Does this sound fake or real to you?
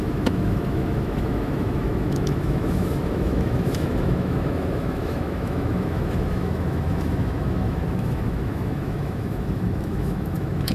fake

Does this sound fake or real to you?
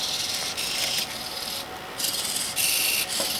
real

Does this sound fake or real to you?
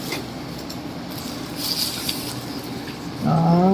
real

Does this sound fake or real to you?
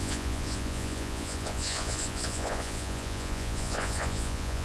fake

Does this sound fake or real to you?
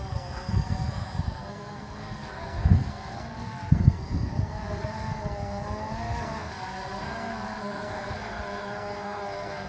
fake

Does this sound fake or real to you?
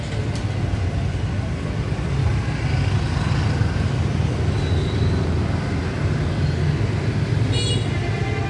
real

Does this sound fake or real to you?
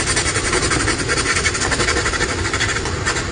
real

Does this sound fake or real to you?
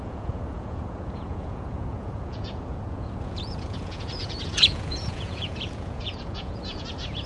fake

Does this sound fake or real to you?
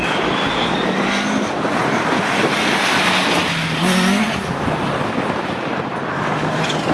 real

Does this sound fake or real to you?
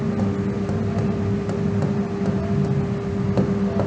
real